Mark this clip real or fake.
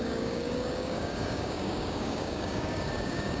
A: fake